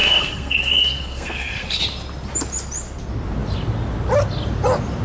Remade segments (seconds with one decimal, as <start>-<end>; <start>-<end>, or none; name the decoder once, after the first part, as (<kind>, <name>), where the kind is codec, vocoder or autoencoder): 0.0-1.8 (codec, SNAC)